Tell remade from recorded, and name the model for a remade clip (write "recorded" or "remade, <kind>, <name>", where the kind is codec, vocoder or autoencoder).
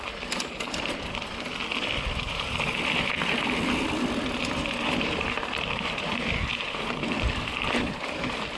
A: remade, vocoder, BigVGAN v2